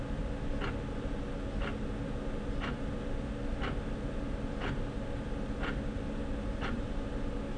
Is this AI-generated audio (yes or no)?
no